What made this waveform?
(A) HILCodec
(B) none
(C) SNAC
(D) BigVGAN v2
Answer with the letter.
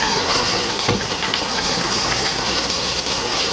C